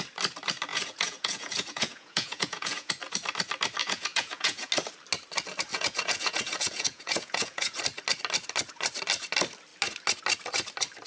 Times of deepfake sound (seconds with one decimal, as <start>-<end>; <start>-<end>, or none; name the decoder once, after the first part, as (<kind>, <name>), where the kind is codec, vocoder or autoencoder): 0.7-2.9 (vocoder, Vocos); 3.8-4.7; 5.7-7.8